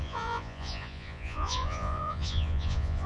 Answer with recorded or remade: remade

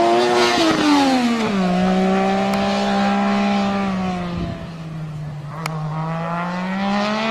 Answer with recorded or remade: recorded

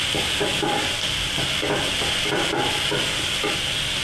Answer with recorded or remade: recorded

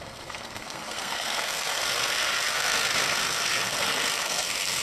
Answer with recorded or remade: remade